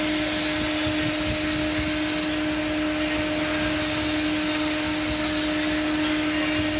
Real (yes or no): yes